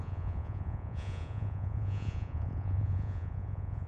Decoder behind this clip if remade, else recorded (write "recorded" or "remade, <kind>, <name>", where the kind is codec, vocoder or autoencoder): remade, vocoder, Vocos